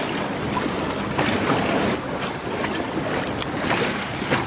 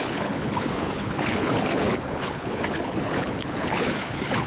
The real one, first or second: first